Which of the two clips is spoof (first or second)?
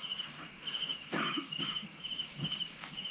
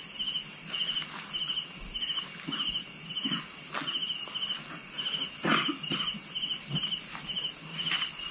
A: first